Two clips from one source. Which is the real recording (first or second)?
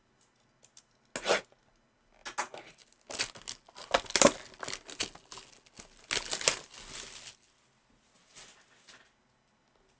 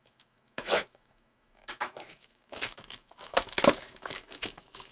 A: first